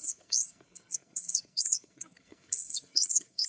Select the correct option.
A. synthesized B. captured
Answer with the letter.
A